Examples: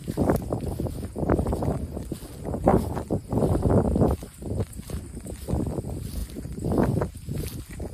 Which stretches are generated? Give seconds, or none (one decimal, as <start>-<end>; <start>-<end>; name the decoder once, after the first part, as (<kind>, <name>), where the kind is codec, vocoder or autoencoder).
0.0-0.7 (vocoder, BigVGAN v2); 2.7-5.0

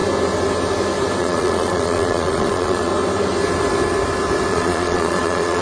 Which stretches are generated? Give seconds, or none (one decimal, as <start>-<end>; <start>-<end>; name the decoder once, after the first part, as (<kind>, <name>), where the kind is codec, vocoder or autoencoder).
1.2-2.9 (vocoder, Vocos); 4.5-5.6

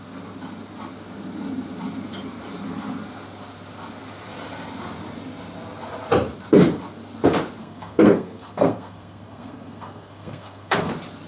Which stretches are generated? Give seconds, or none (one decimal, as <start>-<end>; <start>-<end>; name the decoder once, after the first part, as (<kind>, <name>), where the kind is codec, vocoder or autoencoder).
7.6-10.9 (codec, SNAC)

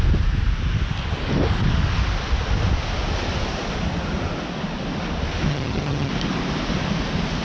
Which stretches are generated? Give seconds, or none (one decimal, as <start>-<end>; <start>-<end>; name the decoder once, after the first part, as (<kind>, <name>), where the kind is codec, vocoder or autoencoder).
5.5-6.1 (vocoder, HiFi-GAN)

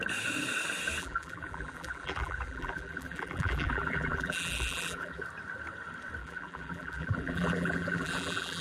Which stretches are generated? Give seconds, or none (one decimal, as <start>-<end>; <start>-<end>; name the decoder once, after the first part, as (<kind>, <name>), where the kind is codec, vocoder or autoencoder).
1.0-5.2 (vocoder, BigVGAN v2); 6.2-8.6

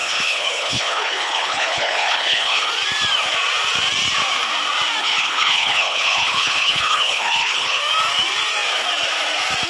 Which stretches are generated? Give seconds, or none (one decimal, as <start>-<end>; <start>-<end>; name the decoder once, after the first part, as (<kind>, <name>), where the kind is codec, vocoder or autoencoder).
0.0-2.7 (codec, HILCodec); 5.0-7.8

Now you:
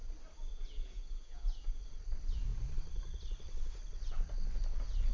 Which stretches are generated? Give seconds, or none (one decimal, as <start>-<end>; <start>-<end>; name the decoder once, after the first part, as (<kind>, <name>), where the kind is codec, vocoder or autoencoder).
0.5-1.8 (vocoder, Vocos)